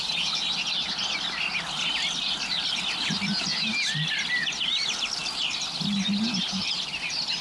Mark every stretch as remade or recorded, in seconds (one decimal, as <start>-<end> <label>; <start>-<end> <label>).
0.0-7.4 recorded